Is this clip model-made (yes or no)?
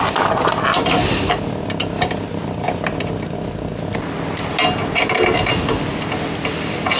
no